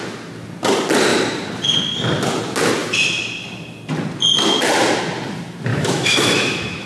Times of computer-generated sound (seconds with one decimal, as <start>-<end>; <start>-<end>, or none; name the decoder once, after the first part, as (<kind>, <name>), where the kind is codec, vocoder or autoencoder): 5.7-6.9 (autoencoder, DAC-VAE)